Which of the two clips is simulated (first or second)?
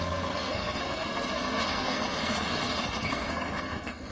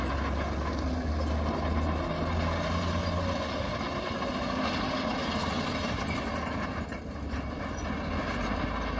first